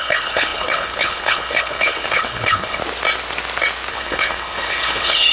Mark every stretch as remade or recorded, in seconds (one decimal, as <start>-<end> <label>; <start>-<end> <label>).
0.0-2.8 remade; 2.8-3.9 recorded; 3.9-5.3 remade